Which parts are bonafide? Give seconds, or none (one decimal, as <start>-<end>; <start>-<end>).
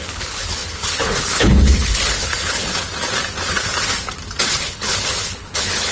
2.7-4.6